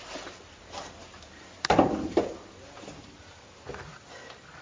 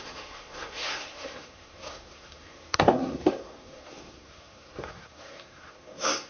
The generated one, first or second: second